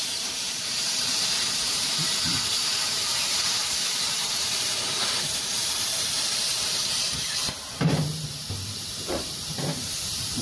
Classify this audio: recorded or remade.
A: remade